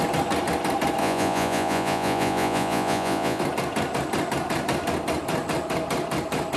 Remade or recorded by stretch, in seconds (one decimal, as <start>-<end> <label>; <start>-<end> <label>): 0.0-1.0 recorded; 1.0-3.4 remade; 3.4-6.6 recorded